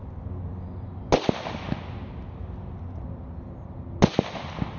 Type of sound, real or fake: real